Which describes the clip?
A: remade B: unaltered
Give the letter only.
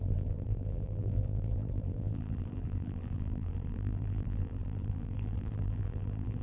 A